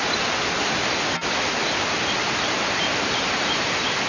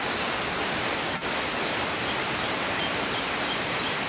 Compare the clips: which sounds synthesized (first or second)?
second